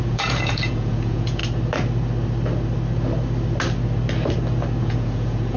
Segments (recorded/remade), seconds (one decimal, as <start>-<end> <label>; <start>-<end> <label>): 0.0-1.4 remade; 1.4-4.8 recorded; 4.8-5.6 remade